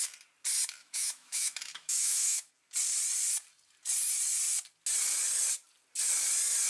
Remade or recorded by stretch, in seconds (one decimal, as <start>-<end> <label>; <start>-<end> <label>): 0.0-0.8 recorded; 0.8-2.5 remade; 2.5-6.7 recorded